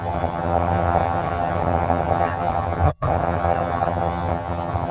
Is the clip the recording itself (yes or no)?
no